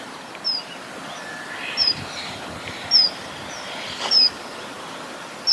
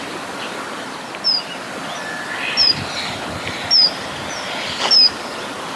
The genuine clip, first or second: second